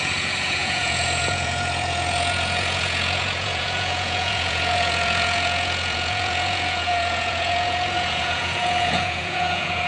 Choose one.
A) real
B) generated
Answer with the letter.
B